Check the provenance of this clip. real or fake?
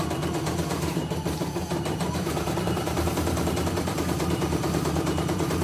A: fake